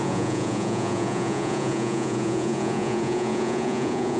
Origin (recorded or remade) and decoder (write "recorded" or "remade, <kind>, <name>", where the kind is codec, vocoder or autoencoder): remade, vocoder, Vocos